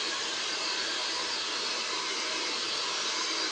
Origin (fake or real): real